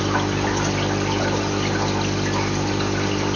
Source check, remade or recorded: recorded